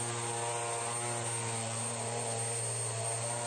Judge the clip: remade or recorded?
recorded